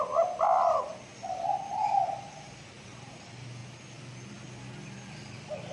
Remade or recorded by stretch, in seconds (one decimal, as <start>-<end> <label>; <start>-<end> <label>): 0.0-3.6 recorded; 3.6-4.3 remade; 4.3-5.7 recorded